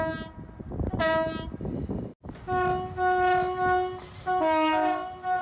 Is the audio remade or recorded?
recorded